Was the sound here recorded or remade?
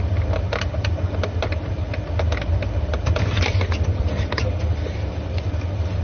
recorded